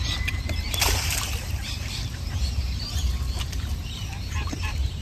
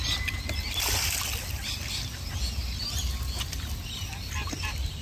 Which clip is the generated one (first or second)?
first